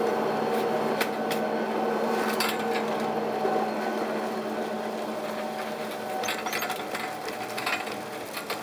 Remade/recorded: recorded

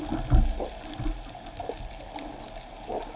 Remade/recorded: recorded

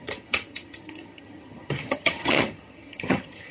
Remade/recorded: remade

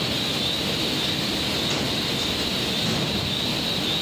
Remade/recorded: recorded